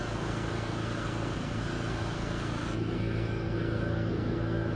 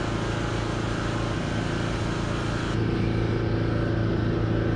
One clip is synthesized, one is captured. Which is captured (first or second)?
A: second